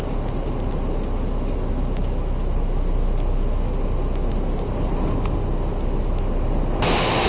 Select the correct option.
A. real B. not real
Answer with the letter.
A